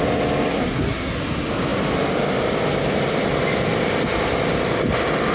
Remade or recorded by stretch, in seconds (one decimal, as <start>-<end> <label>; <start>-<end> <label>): 0.0-0.5 recorded; 0.5-1.1 remade; 1.1-5.3 recorded